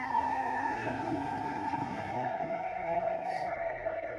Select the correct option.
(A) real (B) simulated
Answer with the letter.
B